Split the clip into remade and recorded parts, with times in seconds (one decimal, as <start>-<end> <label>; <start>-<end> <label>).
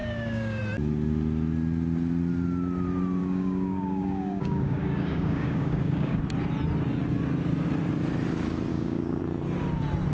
0.0-0.6 remade; 0.6-3.2 recorded; 3.2-6.2 remade; 6.2-8.7 recorded; 8.7-9.2 remade; 9.2-10.1 recorded